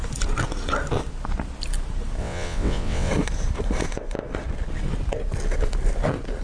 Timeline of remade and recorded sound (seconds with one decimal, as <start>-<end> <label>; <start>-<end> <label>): 0.0-2.2 recorded; 2.2-3.1 remade; 3.1-6.4 recorded